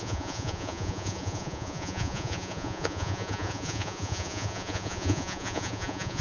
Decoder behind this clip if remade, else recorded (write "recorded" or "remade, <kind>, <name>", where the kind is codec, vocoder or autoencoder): remade, vocoder, Vocos